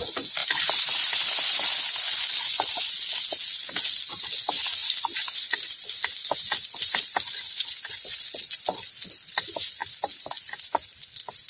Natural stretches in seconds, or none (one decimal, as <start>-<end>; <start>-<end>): 0.0-0.4; 1.7-4.8; 8.6-11.5